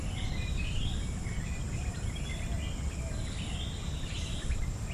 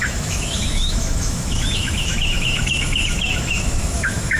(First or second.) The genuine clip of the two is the first